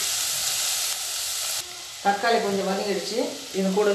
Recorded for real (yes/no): yes